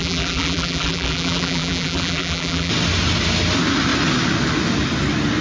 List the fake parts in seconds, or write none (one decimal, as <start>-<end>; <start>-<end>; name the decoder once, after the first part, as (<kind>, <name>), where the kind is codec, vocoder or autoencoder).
0.0-2.7 (vocoder, BigVGAN v2)